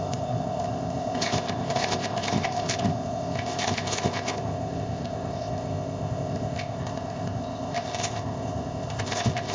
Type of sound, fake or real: fake